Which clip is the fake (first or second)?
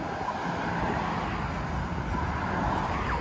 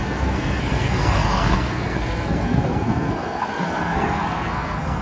second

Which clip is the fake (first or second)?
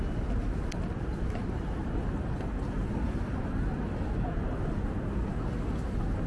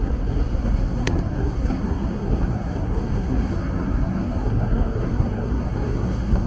second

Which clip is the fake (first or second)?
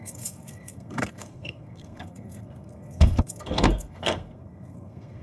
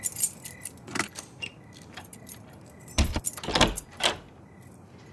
first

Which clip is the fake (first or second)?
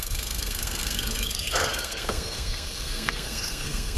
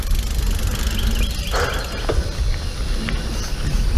first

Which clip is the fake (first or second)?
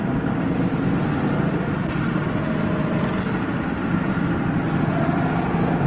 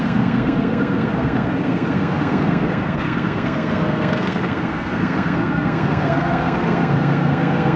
second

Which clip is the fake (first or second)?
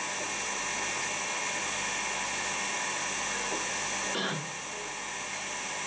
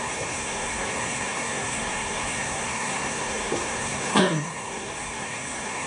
second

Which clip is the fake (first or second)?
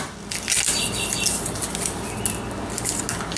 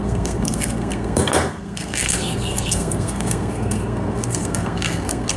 second